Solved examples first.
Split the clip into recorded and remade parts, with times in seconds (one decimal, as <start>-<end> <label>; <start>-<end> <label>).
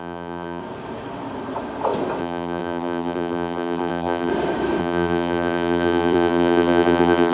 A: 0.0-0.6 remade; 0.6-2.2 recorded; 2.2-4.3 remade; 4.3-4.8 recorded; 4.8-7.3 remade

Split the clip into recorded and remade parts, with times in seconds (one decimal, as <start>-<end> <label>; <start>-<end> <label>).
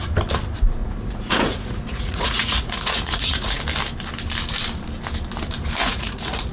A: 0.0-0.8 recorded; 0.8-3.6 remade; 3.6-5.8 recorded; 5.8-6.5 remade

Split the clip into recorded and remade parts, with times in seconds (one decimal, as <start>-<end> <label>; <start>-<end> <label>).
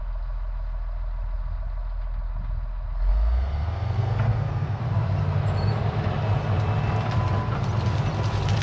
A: 0.0-3.1 recorded; 3.1-4.8 remade; 4.8-8.6 recorded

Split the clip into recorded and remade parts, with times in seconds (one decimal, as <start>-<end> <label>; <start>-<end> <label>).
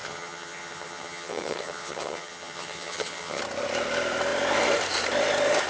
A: 0.0-3.4 remade; 3.4-5.7 recorded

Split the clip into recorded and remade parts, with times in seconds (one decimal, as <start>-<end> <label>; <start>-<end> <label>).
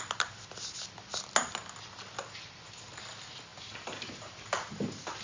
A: 0.0-5.2 recorded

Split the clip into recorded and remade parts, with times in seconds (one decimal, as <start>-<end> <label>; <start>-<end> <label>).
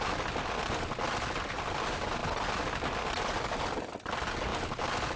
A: 0.0-5.2 recorded